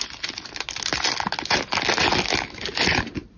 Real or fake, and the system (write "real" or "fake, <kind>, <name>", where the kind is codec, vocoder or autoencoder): real